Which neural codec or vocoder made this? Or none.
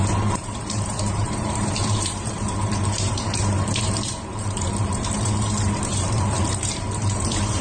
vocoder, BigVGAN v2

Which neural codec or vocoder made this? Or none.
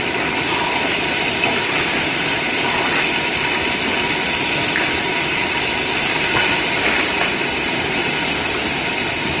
none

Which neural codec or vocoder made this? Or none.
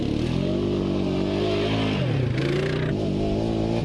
none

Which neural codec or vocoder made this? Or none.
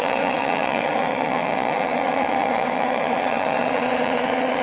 vocoder, Vocos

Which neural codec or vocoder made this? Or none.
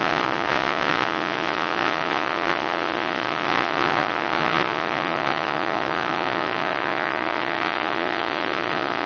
vocoder, Vocos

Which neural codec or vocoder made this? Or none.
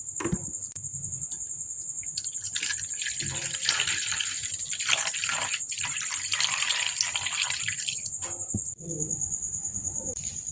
vocoder, BigVGAN v2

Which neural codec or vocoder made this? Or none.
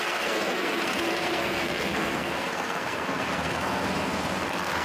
codec, SNAC